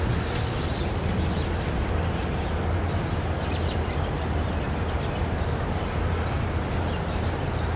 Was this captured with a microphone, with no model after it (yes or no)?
yes